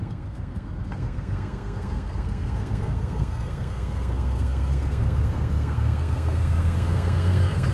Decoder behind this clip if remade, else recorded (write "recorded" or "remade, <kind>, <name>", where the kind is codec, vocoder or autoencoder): remade, codec, SNAC